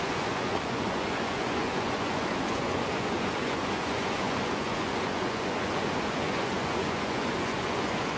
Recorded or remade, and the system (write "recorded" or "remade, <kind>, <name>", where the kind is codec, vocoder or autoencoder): remade, vocoder, Vocos